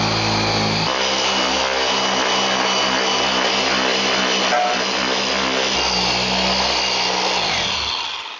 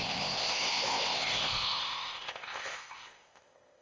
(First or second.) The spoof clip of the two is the second